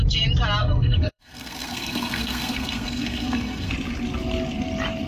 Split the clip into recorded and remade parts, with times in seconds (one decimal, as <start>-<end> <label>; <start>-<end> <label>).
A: 0.0-0.6 recorded; 0.6-3.7 remade; 3.7-5.1 recorded